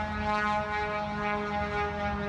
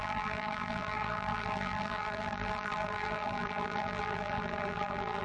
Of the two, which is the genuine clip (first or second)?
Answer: first